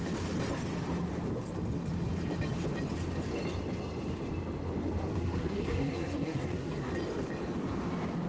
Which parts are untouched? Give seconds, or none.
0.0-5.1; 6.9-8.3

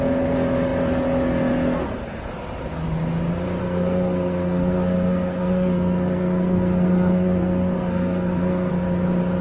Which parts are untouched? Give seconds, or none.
0.0-3.6; 8.7-9.4

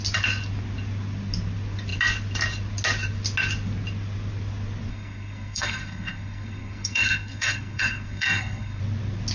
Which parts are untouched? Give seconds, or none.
0.0-4.9; 8.8-9.3

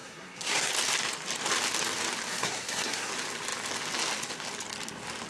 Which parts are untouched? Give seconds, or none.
0.7-2.3; 3.1-5.3

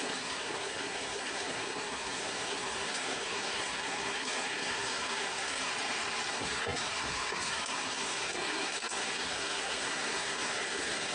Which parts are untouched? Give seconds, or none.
5.7-6.3

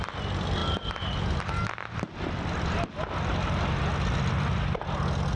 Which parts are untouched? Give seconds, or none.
0.0-5.4

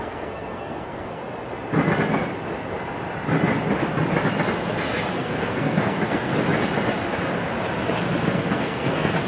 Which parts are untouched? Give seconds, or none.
1.2-5.1; 6.3-8.3